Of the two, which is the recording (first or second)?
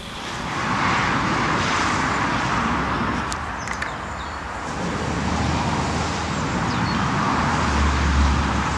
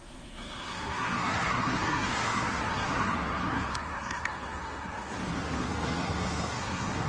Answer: first